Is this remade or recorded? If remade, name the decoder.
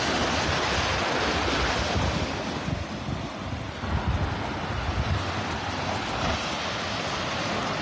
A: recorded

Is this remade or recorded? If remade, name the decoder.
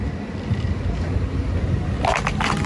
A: recorded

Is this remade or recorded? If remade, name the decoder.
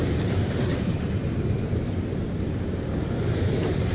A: remade, vocoder, BigVGAN v2